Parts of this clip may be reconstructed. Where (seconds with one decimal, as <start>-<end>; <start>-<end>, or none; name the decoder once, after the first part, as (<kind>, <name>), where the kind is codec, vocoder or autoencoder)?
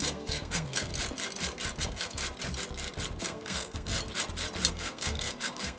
0.0-0.9 (codec, SNAC); 1.8-2.2; 3.2-3.9; 4.7-5.8